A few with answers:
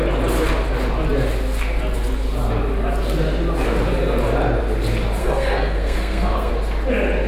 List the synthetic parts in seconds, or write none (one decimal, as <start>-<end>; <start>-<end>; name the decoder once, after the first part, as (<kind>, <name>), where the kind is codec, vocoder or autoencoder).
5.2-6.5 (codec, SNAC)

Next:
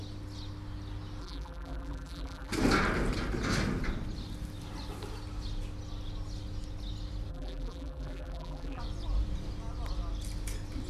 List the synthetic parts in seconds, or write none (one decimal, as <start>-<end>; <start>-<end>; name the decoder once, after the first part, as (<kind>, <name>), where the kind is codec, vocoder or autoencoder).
1.2-2.5 (vocoder, BigVGAN v2); 7.3-8.8

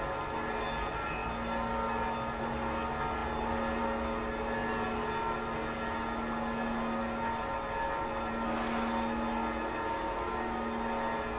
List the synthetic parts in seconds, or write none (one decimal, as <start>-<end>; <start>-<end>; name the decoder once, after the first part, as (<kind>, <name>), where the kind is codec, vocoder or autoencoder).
none

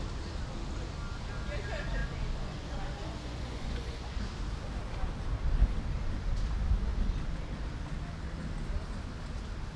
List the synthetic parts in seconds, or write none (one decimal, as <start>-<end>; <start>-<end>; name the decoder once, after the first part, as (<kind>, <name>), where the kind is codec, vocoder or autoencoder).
2.0-4.2 (vocoder, Vocos)